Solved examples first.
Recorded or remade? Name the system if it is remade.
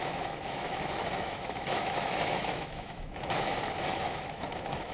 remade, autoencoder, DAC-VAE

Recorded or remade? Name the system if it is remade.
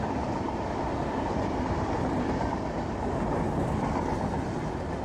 recorded